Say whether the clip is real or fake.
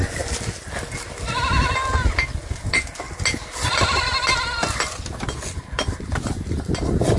real